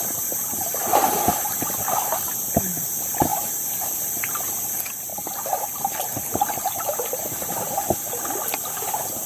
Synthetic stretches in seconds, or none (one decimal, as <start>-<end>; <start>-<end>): 5.1-7.5